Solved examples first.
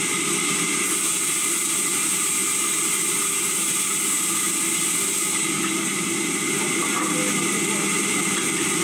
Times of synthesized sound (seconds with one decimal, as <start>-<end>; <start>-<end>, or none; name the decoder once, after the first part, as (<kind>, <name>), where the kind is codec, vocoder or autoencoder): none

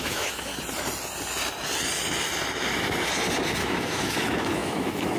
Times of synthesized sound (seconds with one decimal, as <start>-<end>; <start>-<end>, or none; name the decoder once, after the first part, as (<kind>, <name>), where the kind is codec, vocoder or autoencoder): 0.0-0.5 (autoencoder, DAC-VAE); 3.6-5.2

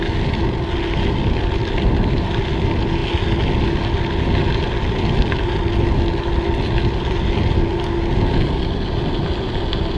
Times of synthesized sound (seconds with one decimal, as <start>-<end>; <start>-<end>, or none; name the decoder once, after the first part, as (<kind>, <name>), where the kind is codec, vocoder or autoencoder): none

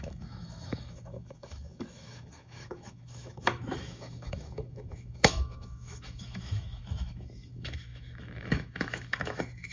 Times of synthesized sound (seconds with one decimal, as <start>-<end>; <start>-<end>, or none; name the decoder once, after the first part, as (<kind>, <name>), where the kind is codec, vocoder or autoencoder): 0.0-9.7 (autoencoder, DAC-VAE)

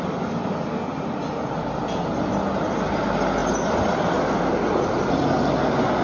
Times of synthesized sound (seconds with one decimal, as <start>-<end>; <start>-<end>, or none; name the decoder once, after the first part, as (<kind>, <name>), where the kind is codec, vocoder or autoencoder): none